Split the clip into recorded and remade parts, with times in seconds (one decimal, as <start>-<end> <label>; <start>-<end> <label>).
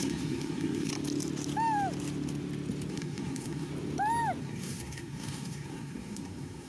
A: 0.0-0.9 remade; 0.9-2.9 recorded; 2.9-3.7 remade; 3.7-4.4 recorded; 4.4-6.7 remade